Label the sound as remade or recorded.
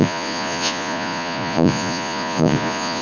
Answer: remade